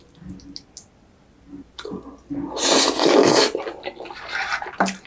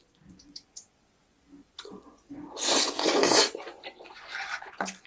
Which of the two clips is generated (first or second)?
second